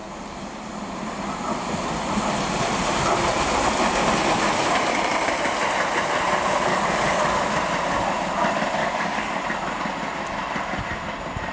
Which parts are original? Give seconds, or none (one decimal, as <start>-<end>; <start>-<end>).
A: 0.0-6.7; 7.4-8.8; 9.4-11.5